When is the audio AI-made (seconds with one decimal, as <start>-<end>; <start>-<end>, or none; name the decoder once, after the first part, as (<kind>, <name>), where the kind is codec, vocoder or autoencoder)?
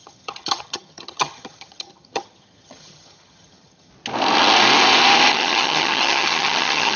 0.0-3.9 (vocoder, HiFi-GAN); 5.3-7.0